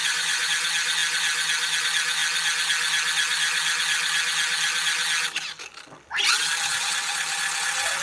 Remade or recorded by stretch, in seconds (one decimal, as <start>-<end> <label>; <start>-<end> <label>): 0.0-0.5 remade; 0.5-8.0 recorded